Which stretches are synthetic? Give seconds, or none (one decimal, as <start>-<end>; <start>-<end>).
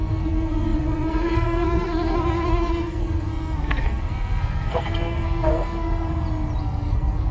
0.0-6.1; 6.6-7.3